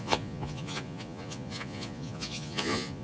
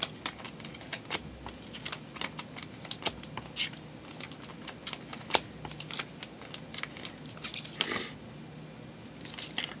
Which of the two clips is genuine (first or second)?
second